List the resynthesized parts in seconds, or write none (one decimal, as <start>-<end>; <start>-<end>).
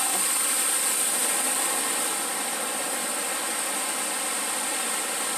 none